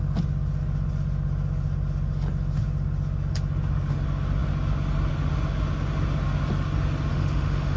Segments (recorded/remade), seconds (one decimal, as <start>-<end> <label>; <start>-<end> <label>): 0.0-7.1 recorded; 7.1-7.8 remade